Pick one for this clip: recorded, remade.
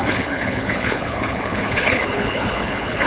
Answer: remade